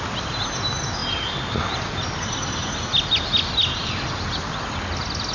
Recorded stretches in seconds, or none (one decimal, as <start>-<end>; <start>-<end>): 0.0-5.3